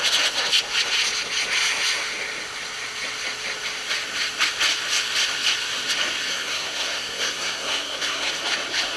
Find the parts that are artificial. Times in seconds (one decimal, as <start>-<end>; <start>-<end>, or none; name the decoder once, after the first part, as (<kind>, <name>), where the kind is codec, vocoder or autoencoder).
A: 6.3-8.3 (codec, SNAC)